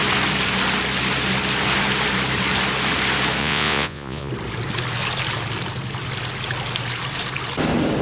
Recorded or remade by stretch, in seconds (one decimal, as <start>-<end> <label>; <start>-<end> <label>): 0.0-3.4 recorded; 3.4-4.3 remade; 4.3-8.0 recorded